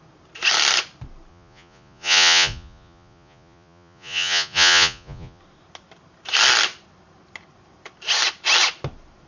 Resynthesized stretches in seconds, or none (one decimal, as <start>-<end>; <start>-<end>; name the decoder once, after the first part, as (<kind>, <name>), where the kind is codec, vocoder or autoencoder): 1.3-5.4 (vocoder, Vocos)